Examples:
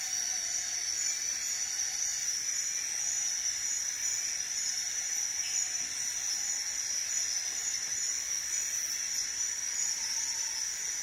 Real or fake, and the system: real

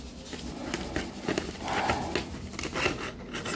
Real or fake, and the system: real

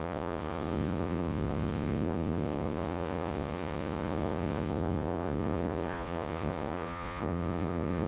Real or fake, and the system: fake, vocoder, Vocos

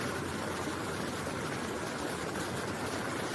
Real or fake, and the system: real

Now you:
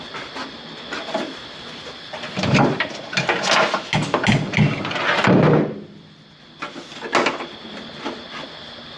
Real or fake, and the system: real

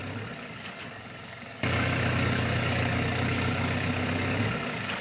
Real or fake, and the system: fake, codec, DAC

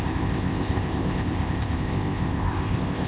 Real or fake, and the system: fake, codec, ZipCodec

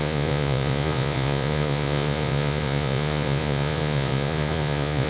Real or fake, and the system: fake, vocoder, Vocos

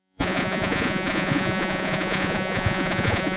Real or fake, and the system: fake, vocoder, Vocos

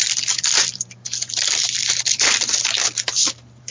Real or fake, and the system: fake, vocoder, BigVGAN v2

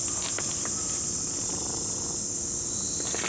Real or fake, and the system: real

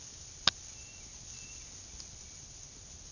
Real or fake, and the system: real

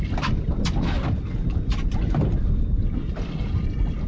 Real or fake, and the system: real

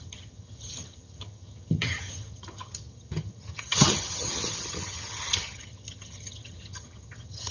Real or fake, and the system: fake, vocoder, HiFi-GAN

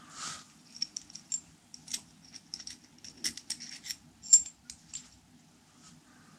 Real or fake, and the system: real